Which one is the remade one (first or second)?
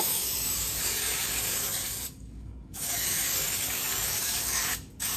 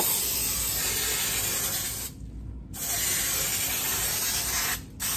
first